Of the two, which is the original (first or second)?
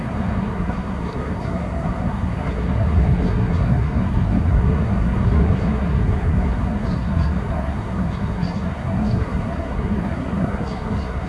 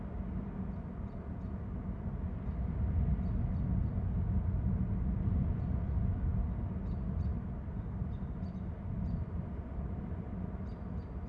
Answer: second